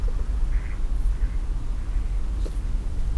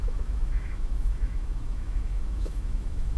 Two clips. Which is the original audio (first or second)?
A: first